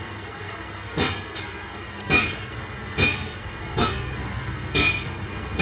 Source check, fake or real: fake